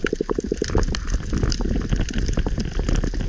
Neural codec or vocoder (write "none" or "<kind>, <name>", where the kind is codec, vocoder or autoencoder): none